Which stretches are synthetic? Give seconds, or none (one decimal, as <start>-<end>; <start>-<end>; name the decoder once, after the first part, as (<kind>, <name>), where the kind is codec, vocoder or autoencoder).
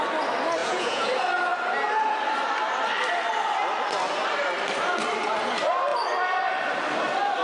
0.6-1.1 (vocoder, Vocos)